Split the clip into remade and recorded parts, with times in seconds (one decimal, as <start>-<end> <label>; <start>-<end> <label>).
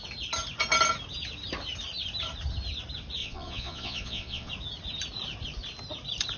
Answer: 0.0-3.2 recorded; 3.2-4.5 remade; 4.5-6.4 recorded